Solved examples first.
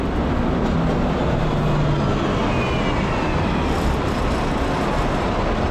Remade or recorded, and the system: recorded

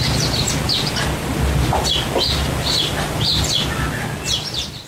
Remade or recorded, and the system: recorded